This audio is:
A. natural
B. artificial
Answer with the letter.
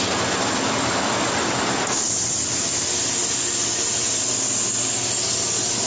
A